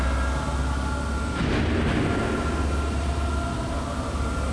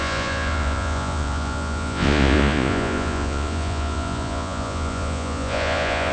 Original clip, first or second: first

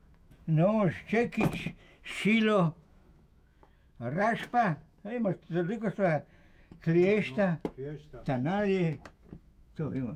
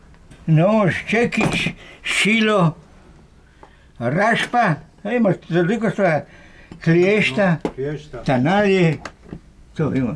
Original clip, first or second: second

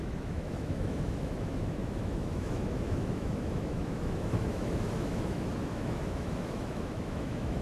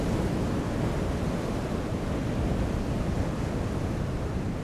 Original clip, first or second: second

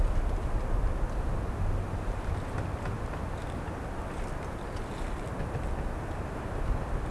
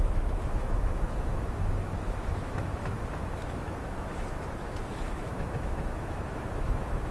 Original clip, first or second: first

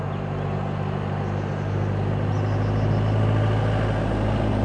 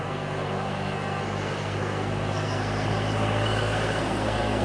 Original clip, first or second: first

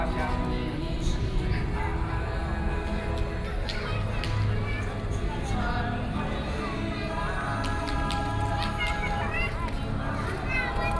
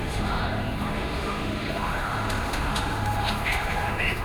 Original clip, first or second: first